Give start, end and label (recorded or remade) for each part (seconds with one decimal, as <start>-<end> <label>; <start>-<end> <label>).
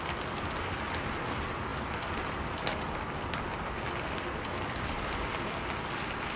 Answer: 0.0-6.4 recorded